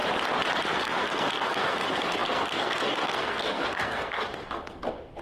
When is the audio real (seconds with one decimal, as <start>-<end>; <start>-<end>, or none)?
0.0-0.6